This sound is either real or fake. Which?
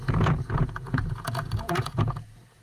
fake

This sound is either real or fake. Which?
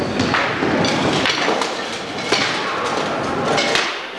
real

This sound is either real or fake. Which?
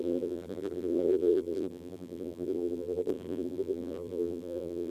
fake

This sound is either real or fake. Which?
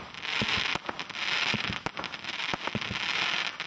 real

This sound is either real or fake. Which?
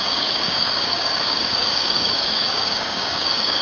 fake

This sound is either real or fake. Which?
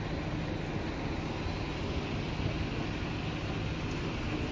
real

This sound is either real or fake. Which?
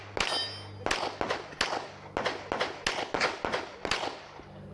real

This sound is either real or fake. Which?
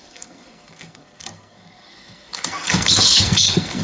fake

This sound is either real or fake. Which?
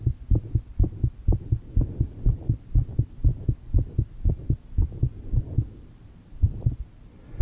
real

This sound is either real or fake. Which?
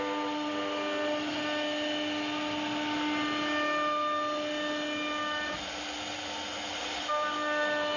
real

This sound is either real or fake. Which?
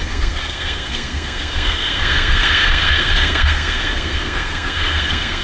fake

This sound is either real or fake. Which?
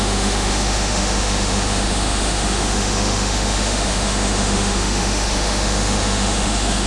fake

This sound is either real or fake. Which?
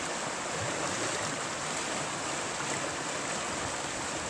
real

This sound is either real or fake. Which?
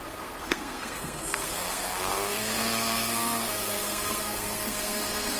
fake